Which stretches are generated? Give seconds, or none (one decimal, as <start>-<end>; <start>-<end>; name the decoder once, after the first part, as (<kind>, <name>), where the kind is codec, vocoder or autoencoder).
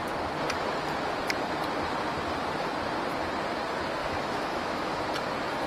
4.0-5.0 (autoencoder, DAC-VAE)